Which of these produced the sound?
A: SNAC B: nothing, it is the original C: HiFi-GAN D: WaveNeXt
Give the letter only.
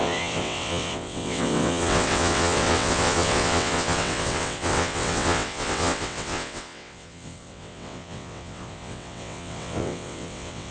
D